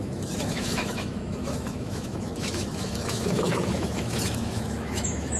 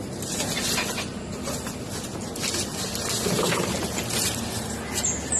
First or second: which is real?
second